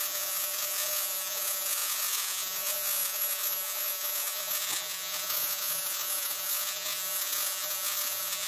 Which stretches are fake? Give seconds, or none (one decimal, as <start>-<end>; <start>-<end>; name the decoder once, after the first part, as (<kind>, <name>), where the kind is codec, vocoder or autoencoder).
0.0-8.5 (vocoder, Vocos)